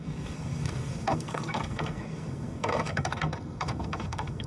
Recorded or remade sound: remade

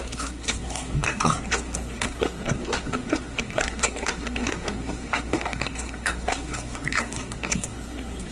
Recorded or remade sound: remade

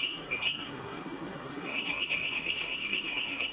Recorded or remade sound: remade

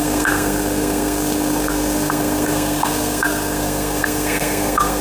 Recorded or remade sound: remade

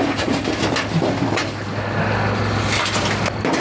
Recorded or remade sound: recorded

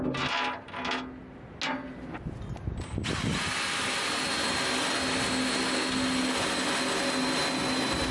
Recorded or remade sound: recorded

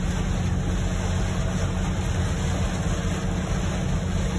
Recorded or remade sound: recorded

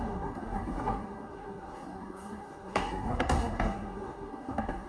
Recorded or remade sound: remade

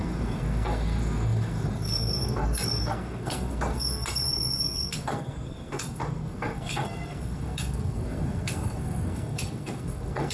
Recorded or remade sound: remade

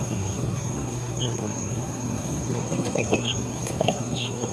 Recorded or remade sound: remade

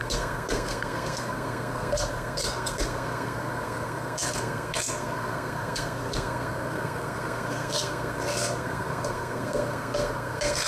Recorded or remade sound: remade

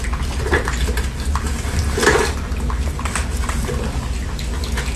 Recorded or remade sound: recorded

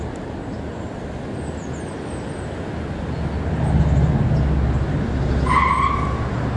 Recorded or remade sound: recorded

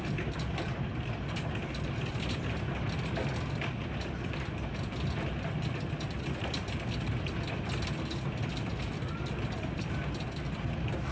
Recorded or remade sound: recorded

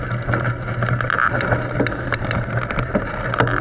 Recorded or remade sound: recorded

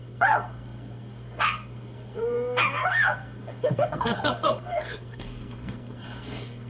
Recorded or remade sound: remade